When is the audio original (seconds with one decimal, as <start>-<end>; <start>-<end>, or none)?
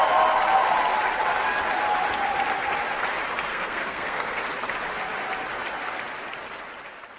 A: 0.0-3.5; 4.4-7.2